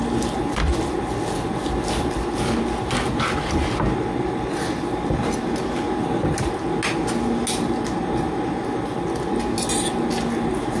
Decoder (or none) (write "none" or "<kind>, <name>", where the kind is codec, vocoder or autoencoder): none